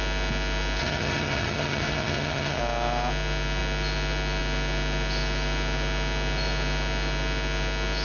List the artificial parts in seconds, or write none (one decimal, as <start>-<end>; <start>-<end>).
0.8-2.6